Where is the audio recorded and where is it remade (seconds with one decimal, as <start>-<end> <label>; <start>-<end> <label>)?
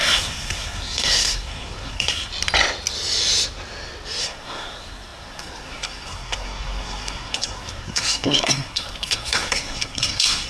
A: 0.0-2.3 remade; 2.3-4.2 recorded; 4.2-10.5 remade